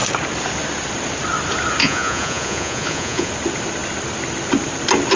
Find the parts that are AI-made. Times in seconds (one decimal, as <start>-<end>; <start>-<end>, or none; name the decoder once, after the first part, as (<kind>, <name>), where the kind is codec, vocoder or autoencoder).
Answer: 1.8-3.3 (vocoder, Vocos)